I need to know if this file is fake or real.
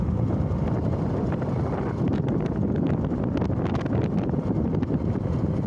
real